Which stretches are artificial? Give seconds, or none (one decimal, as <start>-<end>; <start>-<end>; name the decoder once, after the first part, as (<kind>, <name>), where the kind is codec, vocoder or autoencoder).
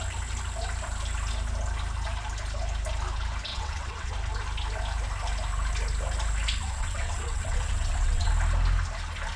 3.5-4.1 (vocoder, WaveNeXt); 6.6-8.3